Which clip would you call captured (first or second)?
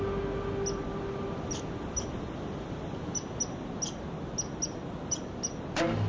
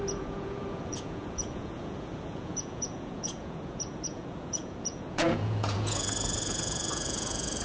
first